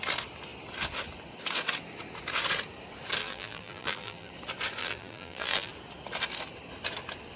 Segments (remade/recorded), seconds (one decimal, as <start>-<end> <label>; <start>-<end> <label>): 0.0-3.2 recorded; 3.2-4.3 remade; 4.3-4.8 recorded; 4.8-5.7 remade; 5.7-7.4 recorded